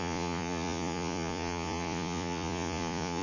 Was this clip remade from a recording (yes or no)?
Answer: yes